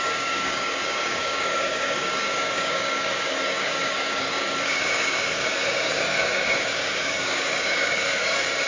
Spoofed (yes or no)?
yes